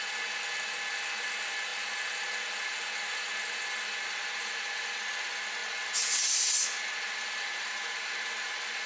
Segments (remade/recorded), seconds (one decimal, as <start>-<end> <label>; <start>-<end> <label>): 0.0-8.9 recorded